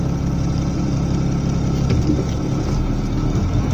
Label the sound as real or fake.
real